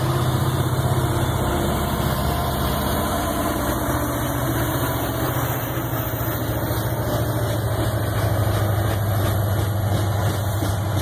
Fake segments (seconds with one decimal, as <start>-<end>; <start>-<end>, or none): 0.0-5.9